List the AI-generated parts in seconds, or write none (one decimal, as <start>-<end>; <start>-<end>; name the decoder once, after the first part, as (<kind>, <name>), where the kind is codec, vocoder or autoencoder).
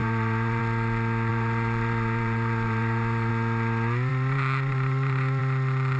0.0-0.6 (vocoder, BigVGAN v2); 1.3-3.3; 4.1-5.4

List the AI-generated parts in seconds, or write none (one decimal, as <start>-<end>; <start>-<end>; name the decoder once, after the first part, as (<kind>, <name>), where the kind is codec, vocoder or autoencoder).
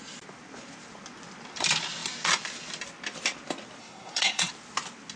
3.8-4.5 (codec, SNAC)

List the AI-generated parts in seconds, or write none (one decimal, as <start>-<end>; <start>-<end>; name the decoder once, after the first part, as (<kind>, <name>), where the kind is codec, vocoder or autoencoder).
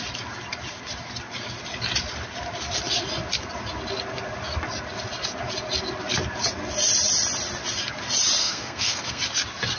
8.4-9.2 (codec, SNAC)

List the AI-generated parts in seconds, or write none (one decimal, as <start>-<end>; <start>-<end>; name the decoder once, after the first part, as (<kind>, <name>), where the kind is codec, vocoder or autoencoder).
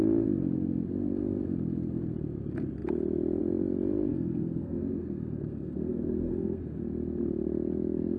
4.1-6.6 (codec, SNAC)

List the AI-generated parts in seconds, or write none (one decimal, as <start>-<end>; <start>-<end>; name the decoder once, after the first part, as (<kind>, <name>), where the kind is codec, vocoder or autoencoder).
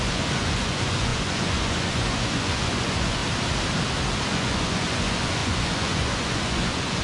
0.0-3.2 (vocoder, Vocos); 4.3-7.0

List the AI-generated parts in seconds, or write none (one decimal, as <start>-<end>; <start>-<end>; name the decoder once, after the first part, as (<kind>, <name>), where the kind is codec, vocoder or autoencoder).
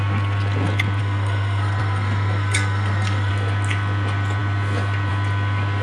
1.0-3.3 (codec, SNAC)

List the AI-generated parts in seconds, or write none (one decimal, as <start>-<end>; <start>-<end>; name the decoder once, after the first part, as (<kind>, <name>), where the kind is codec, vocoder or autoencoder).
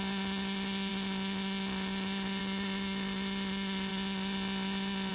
none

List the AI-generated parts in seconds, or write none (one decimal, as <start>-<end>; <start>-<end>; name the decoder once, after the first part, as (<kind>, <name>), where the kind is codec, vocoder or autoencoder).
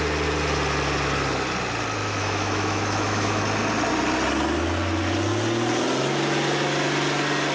2.0-3.4 (autoencoder, DAC-VAE)